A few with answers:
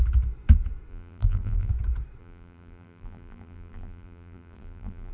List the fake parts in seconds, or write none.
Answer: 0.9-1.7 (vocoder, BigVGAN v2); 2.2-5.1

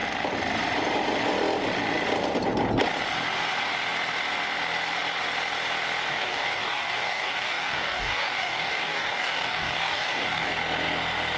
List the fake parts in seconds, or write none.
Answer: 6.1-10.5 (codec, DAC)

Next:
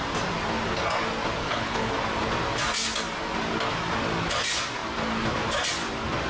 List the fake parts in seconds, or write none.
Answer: 1.4-1.9 (codec, HILCodec)

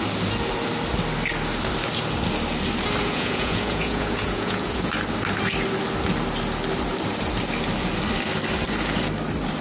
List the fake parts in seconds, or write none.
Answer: 3.0-4.9 (vocoder, Vocos)

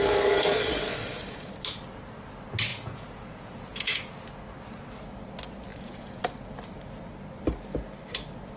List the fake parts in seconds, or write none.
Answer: 2.7-4.2 (vocoder, Vocos); 5.7-6.2